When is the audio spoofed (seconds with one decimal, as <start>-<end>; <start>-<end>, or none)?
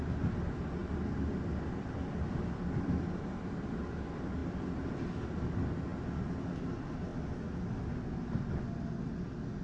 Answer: 0.8-3.7; 4.4-4.9